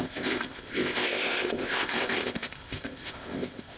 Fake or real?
fake